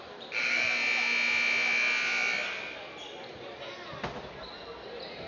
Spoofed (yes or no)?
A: no